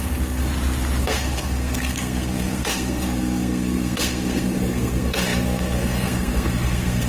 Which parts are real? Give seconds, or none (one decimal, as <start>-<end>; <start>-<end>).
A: 0.5-1.0

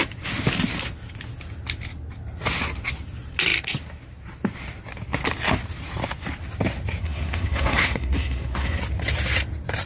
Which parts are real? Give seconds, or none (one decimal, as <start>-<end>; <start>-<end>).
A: 0.0-7.0; 8.8-9.9